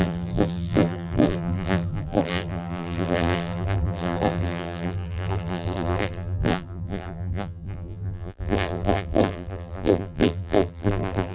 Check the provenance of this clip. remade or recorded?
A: remade